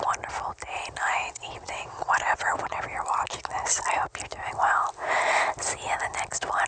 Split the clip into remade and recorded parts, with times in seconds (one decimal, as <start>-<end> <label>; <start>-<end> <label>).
0.0-1.2 recorded; 1.2-2.8 remade; 2.8-6.7 recorded